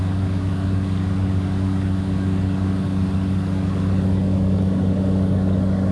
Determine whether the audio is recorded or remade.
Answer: remade